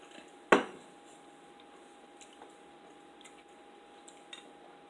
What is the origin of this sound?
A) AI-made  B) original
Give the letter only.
B